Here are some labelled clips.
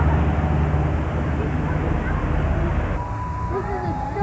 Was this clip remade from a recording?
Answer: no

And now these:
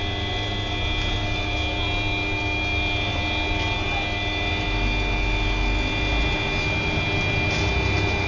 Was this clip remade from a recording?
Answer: no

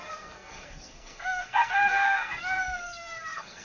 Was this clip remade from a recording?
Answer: yes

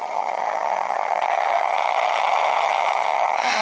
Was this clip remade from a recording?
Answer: yes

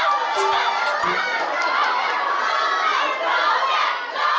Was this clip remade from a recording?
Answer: no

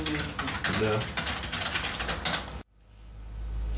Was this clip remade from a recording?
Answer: no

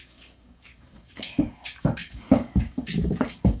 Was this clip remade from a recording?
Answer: yes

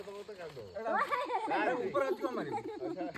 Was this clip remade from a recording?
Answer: no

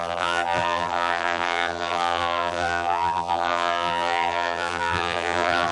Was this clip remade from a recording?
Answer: yes